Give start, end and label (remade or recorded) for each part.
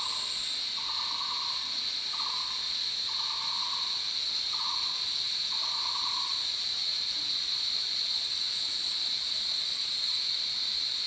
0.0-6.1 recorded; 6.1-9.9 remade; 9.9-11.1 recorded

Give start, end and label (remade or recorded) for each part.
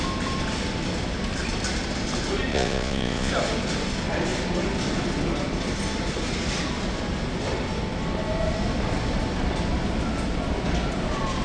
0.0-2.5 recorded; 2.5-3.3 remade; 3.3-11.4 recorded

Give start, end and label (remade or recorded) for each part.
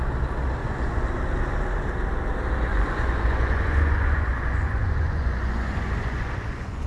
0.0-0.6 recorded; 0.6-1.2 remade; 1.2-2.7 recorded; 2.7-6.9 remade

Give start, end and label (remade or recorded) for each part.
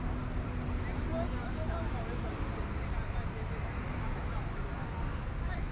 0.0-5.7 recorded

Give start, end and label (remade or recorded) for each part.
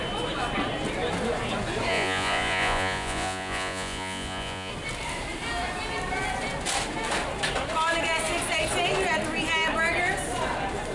0.0-1.9 recorded; 1.9-4.7 remade; 4.7-10.9 recorded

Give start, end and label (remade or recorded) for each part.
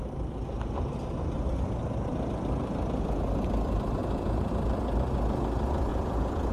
0.0-4.0 recorded; 4.0-4.5 remade; 4.5-5.9 recorded; 5.9-6.5 remade